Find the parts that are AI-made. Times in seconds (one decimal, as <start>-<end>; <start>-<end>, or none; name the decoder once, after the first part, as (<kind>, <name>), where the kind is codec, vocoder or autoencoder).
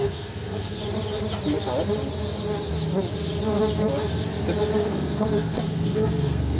0.0-0.8 (codec, SNAC); 4.8-6.6